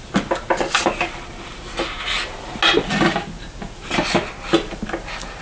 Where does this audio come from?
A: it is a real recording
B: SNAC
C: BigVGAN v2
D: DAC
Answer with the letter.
A